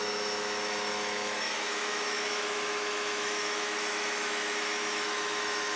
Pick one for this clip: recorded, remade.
remade